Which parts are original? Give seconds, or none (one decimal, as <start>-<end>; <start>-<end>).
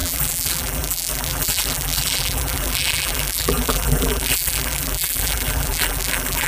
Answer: none